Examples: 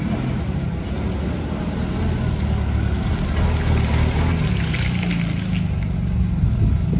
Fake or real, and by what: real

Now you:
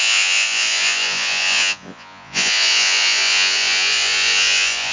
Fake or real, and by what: fake, vocoder, Vocos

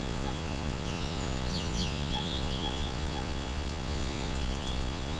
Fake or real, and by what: fake, vocoder, Vocos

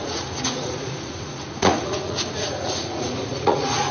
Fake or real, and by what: fake, vocoder, Vocos